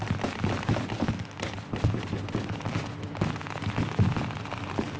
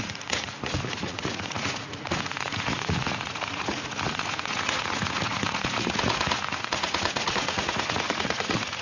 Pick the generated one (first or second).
second